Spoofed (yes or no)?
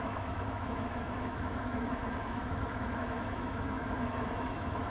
yes